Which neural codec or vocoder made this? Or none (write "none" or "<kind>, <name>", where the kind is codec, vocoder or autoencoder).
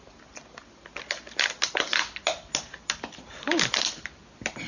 none